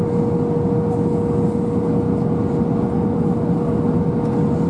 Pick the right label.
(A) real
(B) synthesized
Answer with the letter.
A